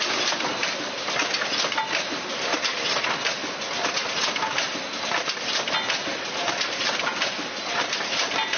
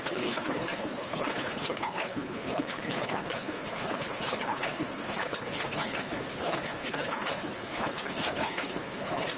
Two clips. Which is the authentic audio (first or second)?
first